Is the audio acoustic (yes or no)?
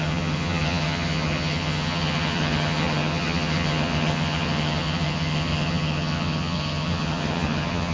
no